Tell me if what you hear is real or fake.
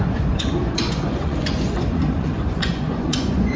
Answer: fake